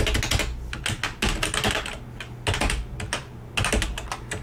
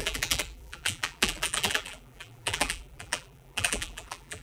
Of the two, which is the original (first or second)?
first